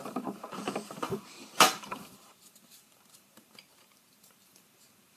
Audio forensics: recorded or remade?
remade